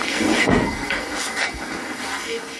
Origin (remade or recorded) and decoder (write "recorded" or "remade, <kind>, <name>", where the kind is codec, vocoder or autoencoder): remade, codec, SNAC